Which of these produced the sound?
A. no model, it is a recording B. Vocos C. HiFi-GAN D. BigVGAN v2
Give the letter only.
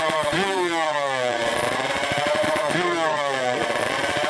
B